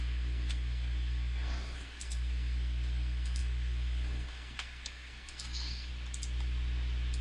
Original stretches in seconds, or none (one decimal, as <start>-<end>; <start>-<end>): 5.9-7.2